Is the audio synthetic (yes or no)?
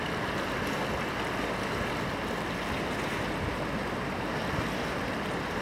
no